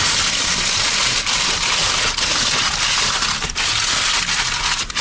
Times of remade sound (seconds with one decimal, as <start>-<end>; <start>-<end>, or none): none